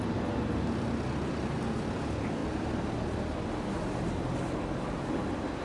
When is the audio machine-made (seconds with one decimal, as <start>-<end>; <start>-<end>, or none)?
none